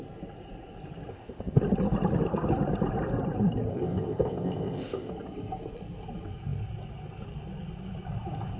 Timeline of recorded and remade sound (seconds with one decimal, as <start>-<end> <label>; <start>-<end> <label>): 0.0-1.1 recorded; 1.1-1.6 remade; 1.6-3.7 recorded; 3.7-5.1 remade; 5.1-8.6 recorded